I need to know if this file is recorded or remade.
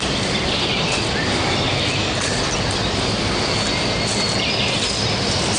recorded